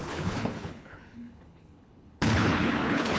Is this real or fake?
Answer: fake